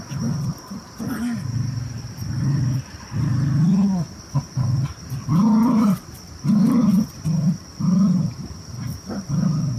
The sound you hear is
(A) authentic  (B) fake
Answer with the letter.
B